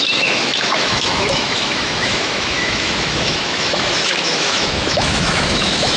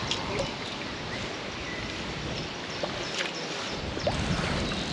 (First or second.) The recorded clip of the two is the second